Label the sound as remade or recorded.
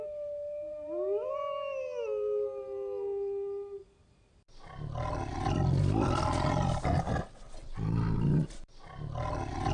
recorded